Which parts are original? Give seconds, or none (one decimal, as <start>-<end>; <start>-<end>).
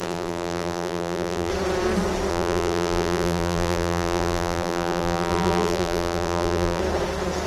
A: 1.5-2.3; 6.8-7.5